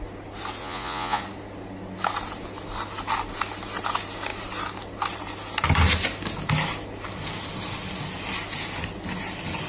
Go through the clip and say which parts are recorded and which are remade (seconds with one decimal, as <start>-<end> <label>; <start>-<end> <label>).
0.0-0.6 recorded; 0.6-1.2 remade; 1.2-9.7 recorded